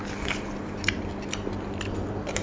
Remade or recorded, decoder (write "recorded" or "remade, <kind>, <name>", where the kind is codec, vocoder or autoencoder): recorded